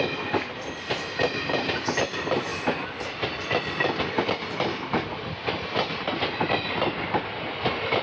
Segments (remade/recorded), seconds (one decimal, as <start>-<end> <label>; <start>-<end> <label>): 0.0-8.0 recorded